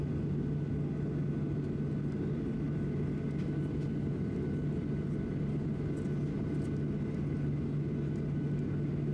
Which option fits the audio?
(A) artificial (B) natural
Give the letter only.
B